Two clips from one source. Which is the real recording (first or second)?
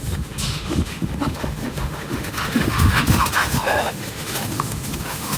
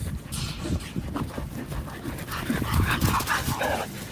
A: second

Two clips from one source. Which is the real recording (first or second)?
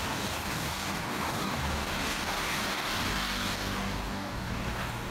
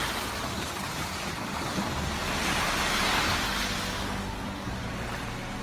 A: second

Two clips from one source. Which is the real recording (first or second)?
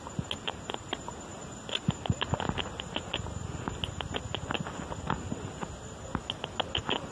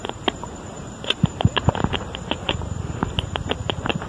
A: first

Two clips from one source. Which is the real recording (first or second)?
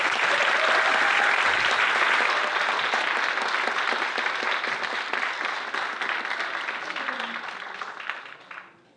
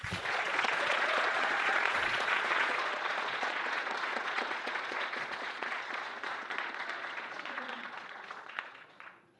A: first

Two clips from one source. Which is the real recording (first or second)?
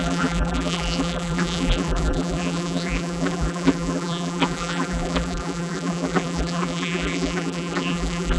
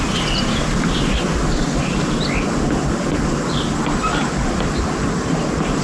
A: second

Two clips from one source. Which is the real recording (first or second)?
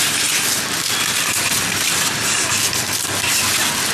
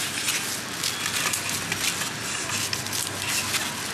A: second